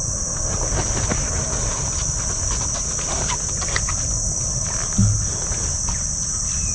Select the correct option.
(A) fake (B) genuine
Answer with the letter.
B